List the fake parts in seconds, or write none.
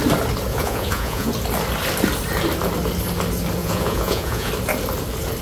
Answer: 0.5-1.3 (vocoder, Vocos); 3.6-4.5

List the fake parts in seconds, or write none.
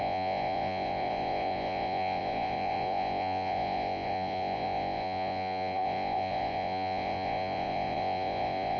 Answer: 0.0-8.8 (vocoder, Vocos)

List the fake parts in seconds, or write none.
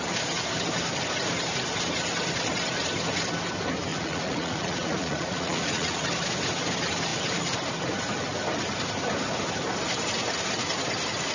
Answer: 3.9-6.1 (vocoder, Vocos)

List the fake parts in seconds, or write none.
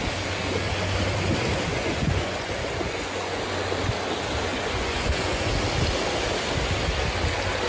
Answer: 1.7-3.4 (vocoder, Vocos); 4.5-5.5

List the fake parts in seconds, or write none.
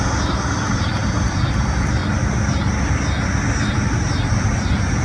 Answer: none